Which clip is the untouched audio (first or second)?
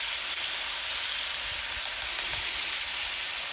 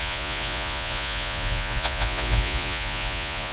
first